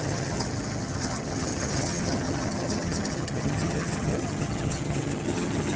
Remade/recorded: remade